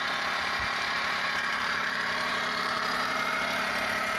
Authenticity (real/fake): fake